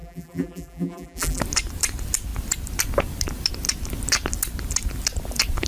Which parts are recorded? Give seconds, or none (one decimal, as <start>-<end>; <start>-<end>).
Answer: 1.4-5.7